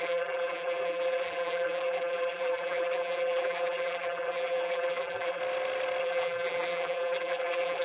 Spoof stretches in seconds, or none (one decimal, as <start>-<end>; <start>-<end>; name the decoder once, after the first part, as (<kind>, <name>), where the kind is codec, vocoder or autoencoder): 0.0-5.4 (vocoder, BigVGAN v2); 6.0-7.8

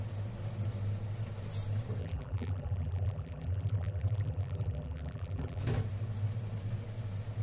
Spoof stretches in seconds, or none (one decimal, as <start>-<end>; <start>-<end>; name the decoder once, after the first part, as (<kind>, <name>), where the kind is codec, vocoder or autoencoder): 2.0-5.6 (vocoder, BigVGAN v2)

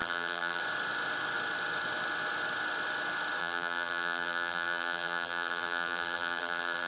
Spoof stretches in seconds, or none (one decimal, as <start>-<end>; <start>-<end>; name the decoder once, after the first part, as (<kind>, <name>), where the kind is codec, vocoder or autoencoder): 0.0-0.6 (vocoder, BigVGAN v2); 3.4-6.9

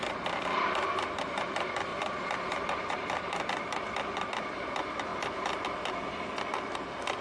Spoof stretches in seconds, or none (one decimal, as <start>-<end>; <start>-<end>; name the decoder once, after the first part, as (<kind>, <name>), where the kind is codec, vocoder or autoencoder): 0.0-1.2 (vocoder, BigVGAN v2); 1.9-4.3

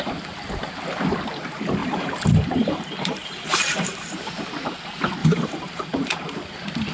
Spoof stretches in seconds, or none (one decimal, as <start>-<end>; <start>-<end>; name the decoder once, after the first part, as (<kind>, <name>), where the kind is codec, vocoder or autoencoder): 1.8-4.3 (vocoder, BigVGAN v2); 5.2-6.3

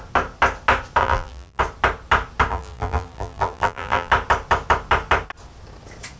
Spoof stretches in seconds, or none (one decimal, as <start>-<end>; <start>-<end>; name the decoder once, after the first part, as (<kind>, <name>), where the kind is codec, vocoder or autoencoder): 1.0-1.6 (vocoder, BigVGAN v2); 2.5-4.1

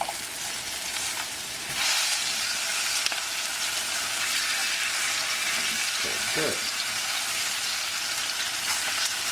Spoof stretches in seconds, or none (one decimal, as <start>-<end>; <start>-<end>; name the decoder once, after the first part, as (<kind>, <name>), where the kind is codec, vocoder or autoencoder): none